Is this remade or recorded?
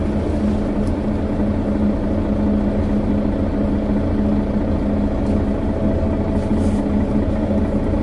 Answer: recorded